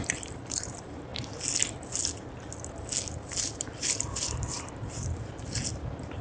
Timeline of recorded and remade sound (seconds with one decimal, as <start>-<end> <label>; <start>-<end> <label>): 0.0-1.1 remade; 1.1-3.4 recorded; 3.4-6.2 remade

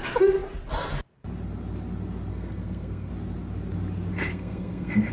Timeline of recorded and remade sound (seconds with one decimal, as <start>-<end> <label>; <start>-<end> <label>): 0.0-2.3 recorded; 2.3-3.1 remade; 3.1-4.3 recorded; 4.3-5.1 remade